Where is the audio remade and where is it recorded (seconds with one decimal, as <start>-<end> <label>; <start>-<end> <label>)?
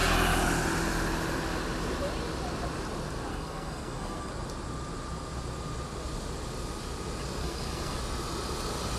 0.0-3.3 recorded; 3.3-4.3 remade; 4.3-7.4 recorded; 7.4-8.0 remade; 8.0-9.0 recorded